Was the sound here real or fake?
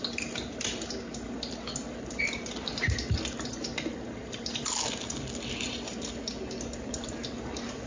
real